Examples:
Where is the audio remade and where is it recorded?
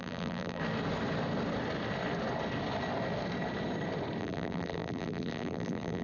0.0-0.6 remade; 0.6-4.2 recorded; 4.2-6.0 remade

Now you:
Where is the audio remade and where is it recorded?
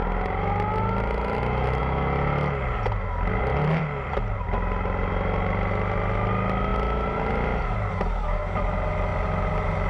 0.0-3.5 recorded; 3.5-4.4 remade; 4.4-6.7 recorded; 6.7-7.3 remade; 7.3-9.1 recorded; 9.1-9.9 remade